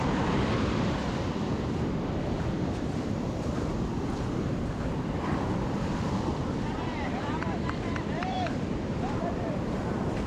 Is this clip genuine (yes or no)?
no